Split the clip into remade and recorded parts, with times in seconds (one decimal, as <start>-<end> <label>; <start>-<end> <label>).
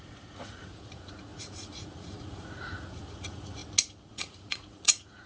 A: 0.0-3.6 remade; 3.6-4.1 recorded; 4.1-5.3 remade